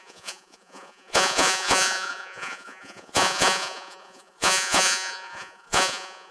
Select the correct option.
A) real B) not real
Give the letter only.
B